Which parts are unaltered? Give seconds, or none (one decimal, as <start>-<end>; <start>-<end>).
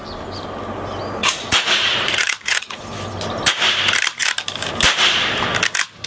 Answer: 0.0-1.2; 2.8-6.1